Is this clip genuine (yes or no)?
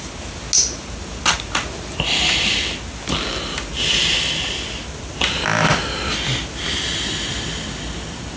yes